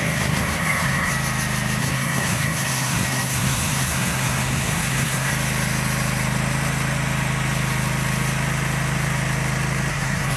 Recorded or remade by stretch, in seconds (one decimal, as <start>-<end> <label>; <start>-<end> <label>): 0.0-1.1 remade; 1.1-1.8 recorded; 1.8-5.3 remade; 5.3-9.9 recorded; 9.9-10.4 remade